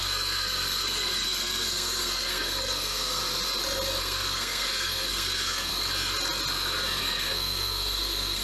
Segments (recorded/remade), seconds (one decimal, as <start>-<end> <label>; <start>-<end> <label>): 0.0-3.2 remade; 3.2-4.0 recorded; 4.0-5.7 remade; 5.7-7.0 recorded; 7.0-8.4 remade